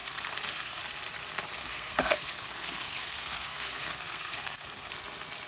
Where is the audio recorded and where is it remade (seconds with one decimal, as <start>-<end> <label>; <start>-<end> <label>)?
0.0-0.8 remade; 0.8-1.6 recorded; 1.6-4.9 remade; 4.9-5.5 recorded